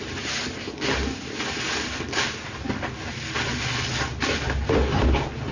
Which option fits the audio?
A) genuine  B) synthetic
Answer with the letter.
A